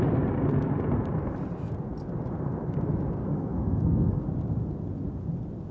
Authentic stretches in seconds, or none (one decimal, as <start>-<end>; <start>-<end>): 0.0-3.2; 4.2-5.7